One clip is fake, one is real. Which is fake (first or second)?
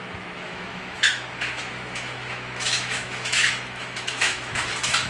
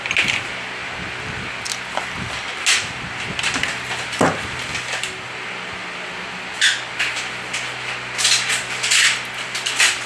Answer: first